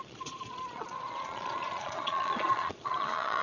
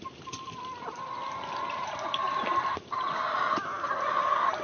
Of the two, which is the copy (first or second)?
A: first